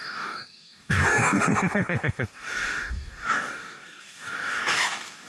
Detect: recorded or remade remade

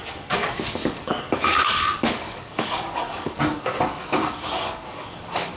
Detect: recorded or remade remade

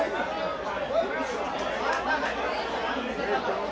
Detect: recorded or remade recorded